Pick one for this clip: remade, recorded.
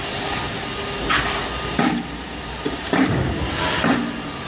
recorded